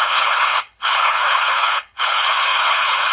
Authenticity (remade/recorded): remade